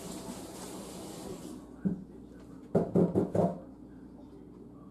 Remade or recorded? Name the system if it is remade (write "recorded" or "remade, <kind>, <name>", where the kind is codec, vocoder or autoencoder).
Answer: recorded